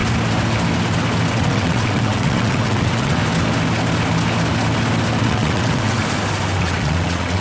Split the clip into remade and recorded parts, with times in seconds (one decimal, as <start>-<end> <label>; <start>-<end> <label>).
0.0-1.3 recorded; 1.3-3.2 remade; 3.2-5.2 recorded; 5.2-6.0 remade; 6.0-6.6 recorded; 6.6-7.4 remade

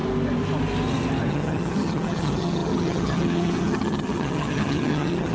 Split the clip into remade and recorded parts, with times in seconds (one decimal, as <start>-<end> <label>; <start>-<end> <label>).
0.0-1.3 recorded; 1.3-5.3 remade

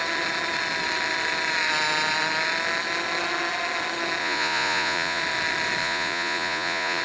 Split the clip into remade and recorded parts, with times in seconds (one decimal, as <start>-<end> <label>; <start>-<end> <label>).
0.0-4.2 recorded; 4.2-5.2 remade; 5.2-5.8 recorded; 5.8-7.0 remade

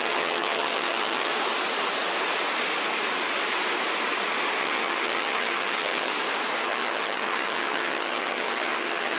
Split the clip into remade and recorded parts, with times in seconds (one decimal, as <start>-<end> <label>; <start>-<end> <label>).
0.0-1.3 remade; 1.3-4.6 recorded; 4.6-6.1 remade; 6.1-6.6 recorded; 6.6-9.2 remade

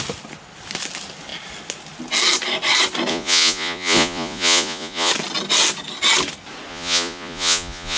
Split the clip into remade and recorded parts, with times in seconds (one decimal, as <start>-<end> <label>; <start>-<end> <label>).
0.0-3.1 recorded; 3.1-5.1 remade; 5.1-6.7 recorded; 6.7-8.0 remade

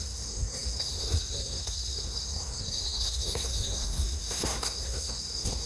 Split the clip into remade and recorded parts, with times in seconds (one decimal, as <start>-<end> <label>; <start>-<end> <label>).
0.0-5.7 remade

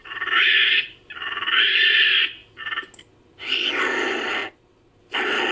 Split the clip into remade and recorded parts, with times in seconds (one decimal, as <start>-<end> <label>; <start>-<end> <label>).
0.0-5.5 recorded